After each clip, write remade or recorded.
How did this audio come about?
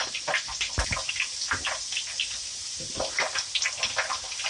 recorded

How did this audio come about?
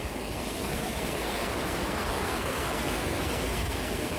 remade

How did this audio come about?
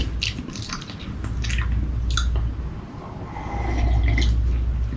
recorded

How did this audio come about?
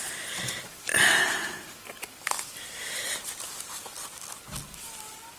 recorded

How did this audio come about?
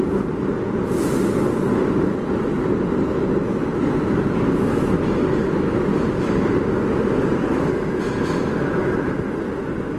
recorded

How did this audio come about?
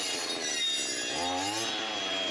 recorded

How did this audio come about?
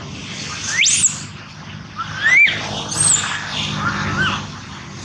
recorded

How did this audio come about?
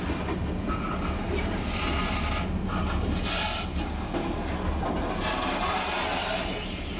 recorded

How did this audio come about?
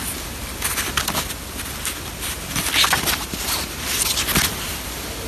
recorded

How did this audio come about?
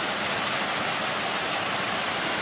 recorded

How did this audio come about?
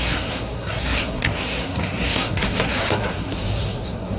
remade